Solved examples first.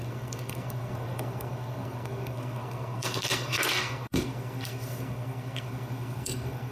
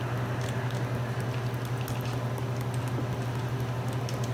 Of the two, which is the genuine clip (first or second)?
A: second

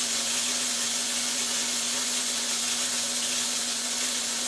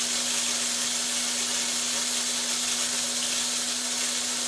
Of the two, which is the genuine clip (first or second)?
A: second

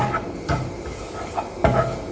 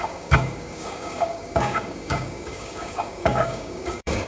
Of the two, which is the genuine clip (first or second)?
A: first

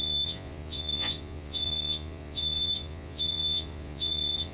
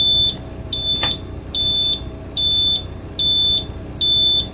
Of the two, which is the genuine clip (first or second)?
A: second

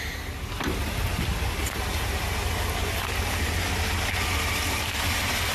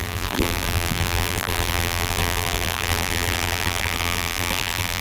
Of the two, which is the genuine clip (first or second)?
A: first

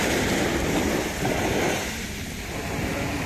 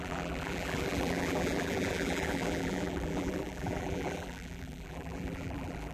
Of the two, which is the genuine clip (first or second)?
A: first